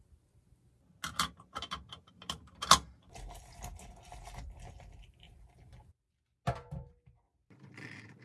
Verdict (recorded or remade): recorded